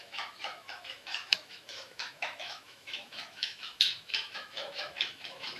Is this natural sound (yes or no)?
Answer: no